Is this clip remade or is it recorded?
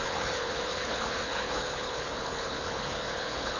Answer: remade